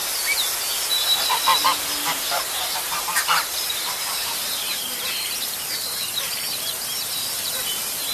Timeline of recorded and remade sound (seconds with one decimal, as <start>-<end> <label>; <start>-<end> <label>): 0.0-0.9 recorded; 0.9-8.1 remade